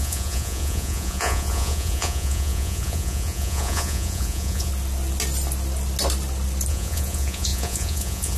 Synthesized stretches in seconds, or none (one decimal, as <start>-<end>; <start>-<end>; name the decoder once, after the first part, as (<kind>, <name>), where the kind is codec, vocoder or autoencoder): 0.0-4.7 (vocoder, Vocos); 6.7-8.4